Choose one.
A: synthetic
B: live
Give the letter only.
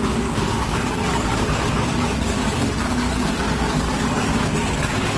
A